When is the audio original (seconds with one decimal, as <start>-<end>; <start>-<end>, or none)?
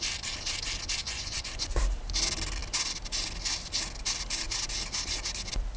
0.0-1.0; 1.8-5.8